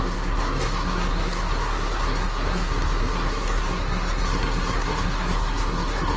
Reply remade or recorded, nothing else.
remade